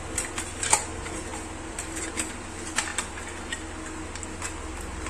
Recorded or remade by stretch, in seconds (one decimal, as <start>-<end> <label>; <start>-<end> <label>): 0.0-1.3 recorded; 1.3-2.1 remade; 2.1-5.1 recorded